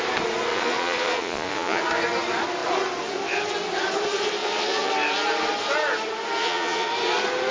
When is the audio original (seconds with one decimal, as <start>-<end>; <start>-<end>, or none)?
0.0-0.5; 1.8-4.4; 4.9-6.4; 6.9-7.5